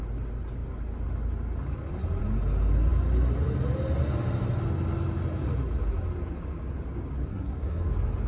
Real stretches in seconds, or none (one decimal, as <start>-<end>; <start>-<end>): 0.0-7.3; 7.9-8.3